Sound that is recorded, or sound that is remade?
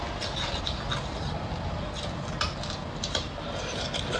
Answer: recorded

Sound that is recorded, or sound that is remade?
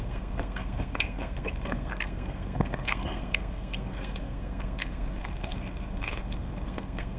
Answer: remade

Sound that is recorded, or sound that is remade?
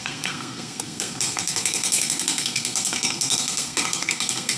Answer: remade